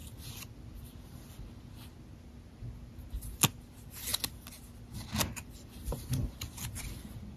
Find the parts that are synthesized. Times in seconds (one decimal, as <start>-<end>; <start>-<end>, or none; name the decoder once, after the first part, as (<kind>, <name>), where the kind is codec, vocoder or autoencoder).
none